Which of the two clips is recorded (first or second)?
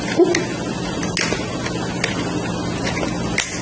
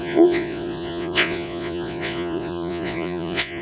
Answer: first